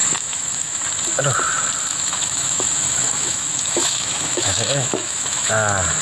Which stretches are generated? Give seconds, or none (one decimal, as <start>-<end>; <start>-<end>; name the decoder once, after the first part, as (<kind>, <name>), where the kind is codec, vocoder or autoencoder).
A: 0.0-0.8 (autoencoder, DAC-VAE); 1.9-5.5

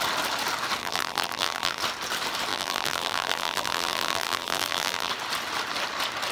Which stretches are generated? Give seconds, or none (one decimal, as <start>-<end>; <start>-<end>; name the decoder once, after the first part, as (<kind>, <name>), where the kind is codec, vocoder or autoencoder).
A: 0.8-1.8 (vocoder, BigVGAN v2); 2.5-5.1

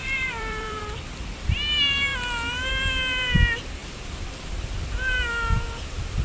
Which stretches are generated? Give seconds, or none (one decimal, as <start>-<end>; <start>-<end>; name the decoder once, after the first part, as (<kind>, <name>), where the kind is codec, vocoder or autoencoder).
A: 0.0-0.8 (vocoder, BigVGAN v2)

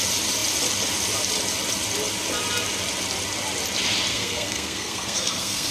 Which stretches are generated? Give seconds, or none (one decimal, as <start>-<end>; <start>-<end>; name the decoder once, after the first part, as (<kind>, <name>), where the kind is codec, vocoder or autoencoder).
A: 4.1-5.7 (codec, SNAC)